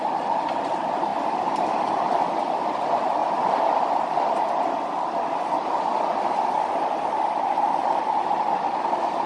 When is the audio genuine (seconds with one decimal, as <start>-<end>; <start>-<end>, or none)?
0.0-9.3